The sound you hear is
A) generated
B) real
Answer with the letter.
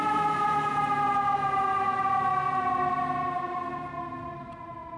B